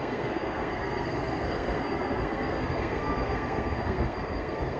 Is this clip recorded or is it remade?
remade